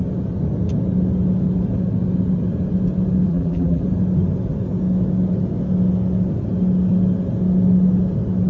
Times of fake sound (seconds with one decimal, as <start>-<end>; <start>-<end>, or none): 3.3-3.8